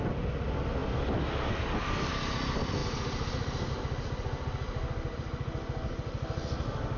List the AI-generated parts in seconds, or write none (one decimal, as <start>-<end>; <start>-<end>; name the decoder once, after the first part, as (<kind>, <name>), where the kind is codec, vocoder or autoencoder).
none